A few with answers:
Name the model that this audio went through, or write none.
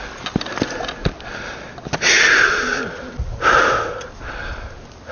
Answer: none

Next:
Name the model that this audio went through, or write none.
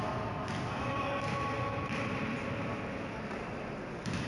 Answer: none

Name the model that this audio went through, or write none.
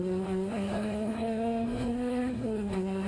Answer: codec, SNAC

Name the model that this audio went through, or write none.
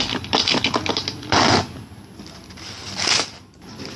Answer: none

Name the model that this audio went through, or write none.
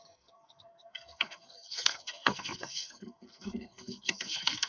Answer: codec, SNAC